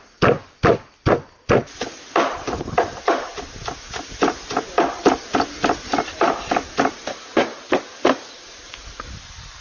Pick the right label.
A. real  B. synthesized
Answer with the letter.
A